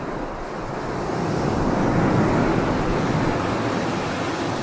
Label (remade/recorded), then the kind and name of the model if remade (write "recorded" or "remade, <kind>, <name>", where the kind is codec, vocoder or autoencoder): recorded